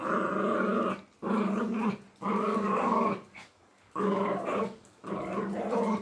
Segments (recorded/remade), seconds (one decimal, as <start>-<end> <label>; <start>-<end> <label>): 0.0-2.3 recorded; 2.3-5.0 remade; 5.0-6.0 recorded